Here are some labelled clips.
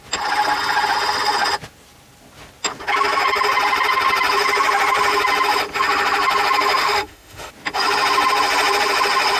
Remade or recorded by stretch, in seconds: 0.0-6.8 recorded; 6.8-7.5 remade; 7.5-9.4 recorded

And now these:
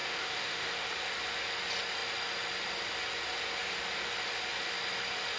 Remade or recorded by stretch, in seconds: 0.0-0.9 remade; 0.9-5.4 recorded

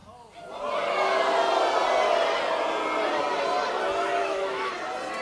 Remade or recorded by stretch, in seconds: 0.0-4.2 recorded; 4.2-4.7 remade; 4.7-5.2 recorded